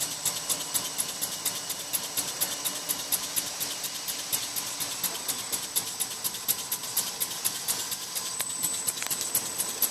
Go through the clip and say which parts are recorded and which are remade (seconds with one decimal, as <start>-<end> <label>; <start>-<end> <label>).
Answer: 0.0-6.8 recorded; 6.8-7.9 remade; 7.9-9.9 recorded